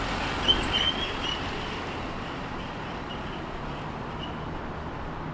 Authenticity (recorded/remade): recorded